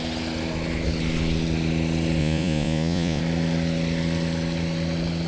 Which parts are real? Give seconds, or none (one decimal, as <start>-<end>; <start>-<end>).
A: 0.0-2.2; 3.2-5.3

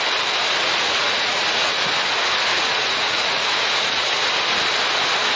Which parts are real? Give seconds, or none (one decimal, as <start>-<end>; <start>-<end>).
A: 0.0-0.6; 1.9-2.5; 4.3-5.4

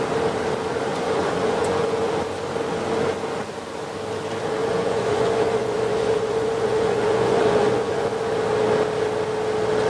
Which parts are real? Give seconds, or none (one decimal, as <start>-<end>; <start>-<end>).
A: 0.0-0.9; 2.1-4.6; 8.2-9.9

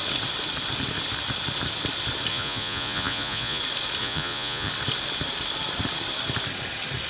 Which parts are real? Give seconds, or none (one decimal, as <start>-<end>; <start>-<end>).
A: 0.0-2.3; 3.6-4.0; 4.7-7.1

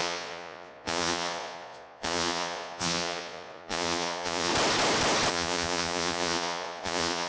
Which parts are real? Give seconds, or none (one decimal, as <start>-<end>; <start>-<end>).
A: 4.5-5.3

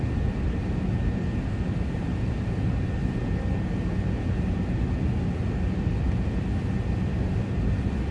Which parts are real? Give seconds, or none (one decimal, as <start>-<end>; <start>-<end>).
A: 0.0-8.1

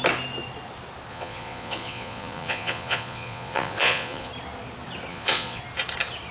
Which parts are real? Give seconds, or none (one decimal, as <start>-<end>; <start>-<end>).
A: 0.0-1.1; 4.3-5.1; 5.6-6.3